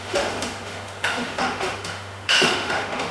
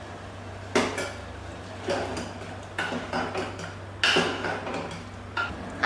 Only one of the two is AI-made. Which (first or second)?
first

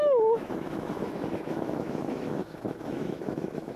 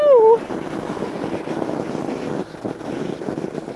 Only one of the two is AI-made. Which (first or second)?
first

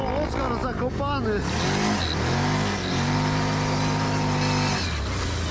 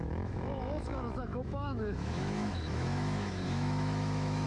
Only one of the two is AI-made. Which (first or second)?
second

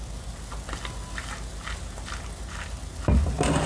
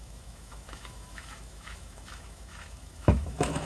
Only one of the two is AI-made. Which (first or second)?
second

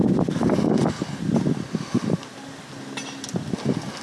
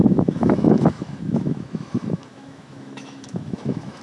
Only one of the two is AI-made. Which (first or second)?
second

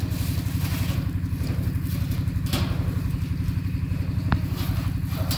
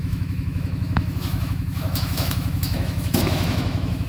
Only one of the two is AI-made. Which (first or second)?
second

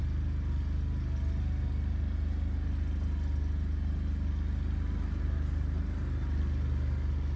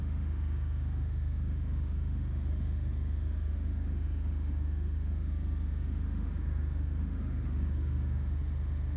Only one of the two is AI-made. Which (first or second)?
second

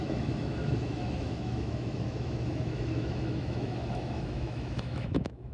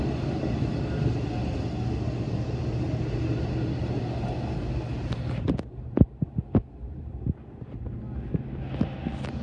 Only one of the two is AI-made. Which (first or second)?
first